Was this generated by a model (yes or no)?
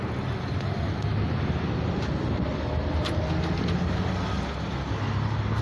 no